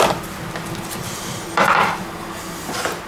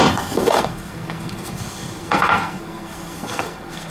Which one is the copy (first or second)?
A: second